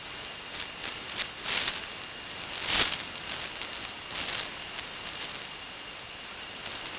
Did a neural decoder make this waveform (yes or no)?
no